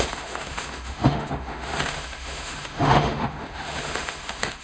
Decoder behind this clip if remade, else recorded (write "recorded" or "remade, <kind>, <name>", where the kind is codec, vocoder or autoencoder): remade, autoencoder, DAC-VAE